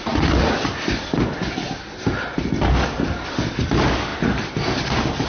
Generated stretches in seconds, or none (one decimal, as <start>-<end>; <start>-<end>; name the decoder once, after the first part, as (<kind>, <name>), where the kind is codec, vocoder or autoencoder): none